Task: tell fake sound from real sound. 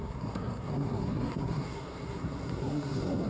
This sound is fake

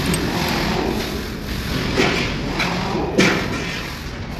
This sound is real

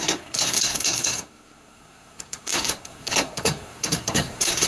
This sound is fake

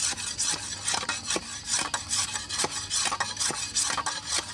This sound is real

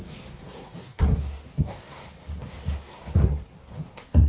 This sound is fake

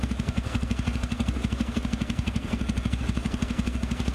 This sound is fake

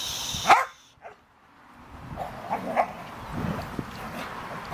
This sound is real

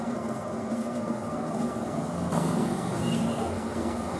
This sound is fake